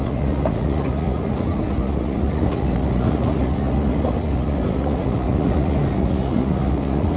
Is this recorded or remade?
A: remade